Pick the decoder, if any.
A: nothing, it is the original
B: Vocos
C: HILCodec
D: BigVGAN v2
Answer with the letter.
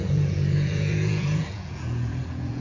B